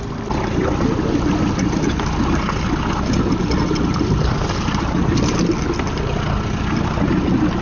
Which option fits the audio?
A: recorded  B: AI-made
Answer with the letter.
A